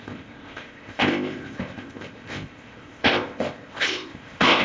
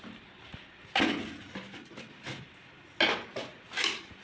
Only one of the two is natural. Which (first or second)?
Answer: second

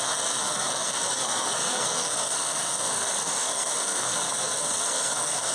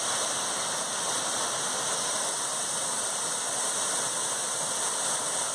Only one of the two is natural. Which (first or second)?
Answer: second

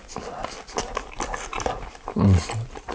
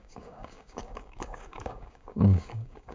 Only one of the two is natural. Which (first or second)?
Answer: first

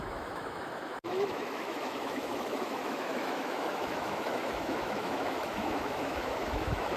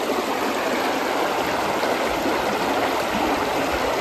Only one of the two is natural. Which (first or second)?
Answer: second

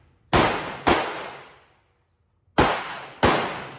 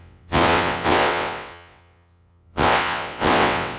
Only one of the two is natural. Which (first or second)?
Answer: first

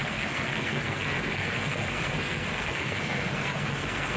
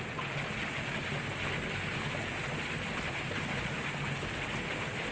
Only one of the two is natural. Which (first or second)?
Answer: second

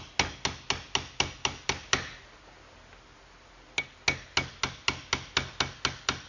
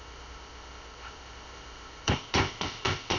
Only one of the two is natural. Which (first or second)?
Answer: first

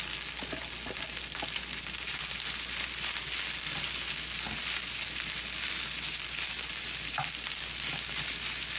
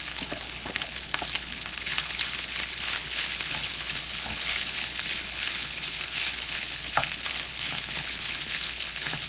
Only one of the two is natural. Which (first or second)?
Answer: first